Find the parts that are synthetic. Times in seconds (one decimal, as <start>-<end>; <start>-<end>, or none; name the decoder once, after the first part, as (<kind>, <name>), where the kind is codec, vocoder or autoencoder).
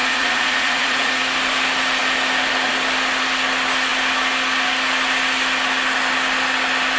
0.0-1.2 (vocoder, Vocos)